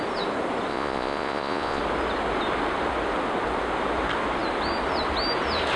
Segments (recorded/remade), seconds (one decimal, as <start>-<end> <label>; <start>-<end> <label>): 0.0-0.7 recorded; 0.7-1.8 remade; 1.8-5.8 recorded